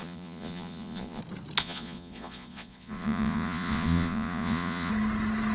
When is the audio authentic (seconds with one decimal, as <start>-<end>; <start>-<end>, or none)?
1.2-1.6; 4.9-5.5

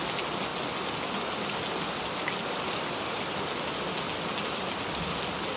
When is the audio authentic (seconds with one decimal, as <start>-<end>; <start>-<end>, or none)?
0.0-5.6

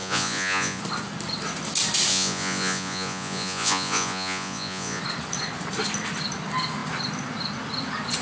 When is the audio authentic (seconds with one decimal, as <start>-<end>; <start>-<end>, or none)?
0.8-2.1; 5.0-8.2

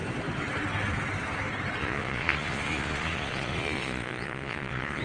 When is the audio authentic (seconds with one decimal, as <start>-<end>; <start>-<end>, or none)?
0.0-1.8

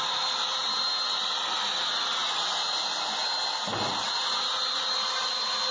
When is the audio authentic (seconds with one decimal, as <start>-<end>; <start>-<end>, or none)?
0.0-5.7

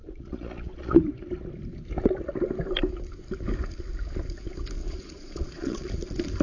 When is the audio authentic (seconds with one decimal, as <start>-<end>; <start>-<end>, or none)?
1.0-4.8; 5.9-6.4

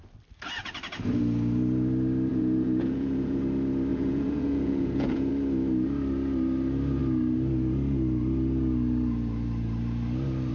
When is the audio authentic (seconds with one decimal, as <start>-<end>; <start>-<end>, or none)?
0.0-2.3; 3.4-3.9; 5.3-10.5

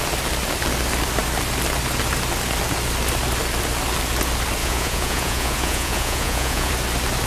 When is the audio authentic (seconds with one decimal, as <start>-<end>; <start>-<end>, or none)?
0.0-4.6; 6.7-7.3